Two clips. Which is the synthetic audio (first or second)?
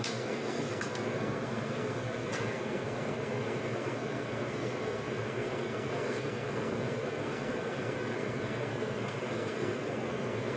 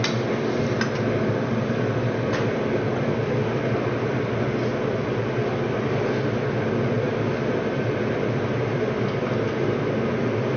first